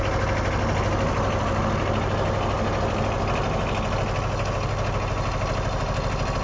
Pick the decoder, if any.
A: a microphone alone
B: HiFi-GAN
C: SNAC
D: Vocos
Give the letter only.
A